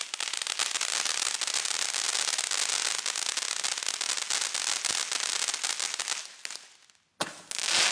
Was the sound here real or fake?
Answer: real